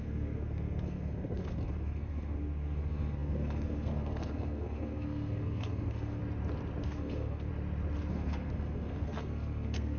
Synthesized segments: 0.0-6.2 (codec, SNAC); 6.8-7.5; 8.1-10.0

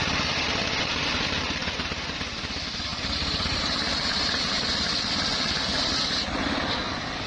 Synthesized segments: none

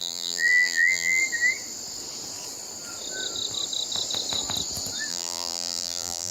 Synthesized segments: 0.0-1.2 (vocoder, BigVGAN v2); 5.1-6.3